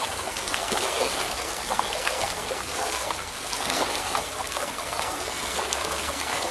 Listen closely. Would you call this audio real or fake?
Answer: fake